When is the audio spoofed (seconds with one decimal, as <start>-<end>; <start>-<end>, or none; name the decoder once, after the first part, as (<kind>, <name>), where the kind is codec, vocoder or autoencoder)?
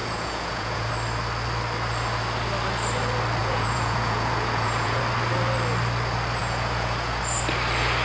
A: 0.0-0.9 (vocoder, Vocos); 3.4-5.0; 6.4-7.2